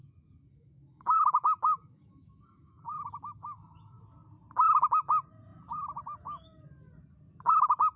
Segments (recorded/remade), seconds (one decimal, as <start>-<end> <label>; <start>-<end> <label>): 0.0-4.0 remade; 4.0-8.0 recorded